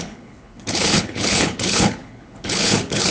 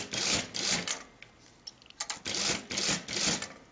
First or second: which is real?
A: second